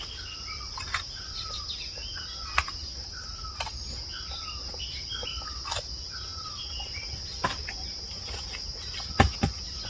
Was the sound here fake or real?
real